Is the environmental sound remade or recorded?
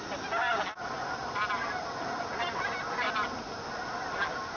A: recorded